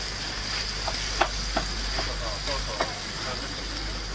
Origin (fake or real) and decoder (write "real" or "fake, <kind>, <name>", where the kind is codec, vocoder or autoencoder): real